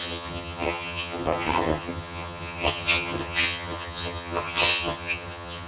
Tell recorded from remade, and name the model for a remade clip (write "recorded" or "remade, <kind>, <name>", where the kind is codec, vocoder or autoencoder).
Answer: remade, vocoder, HiFi-GAN